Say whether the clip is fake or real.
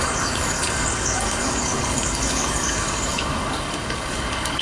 fake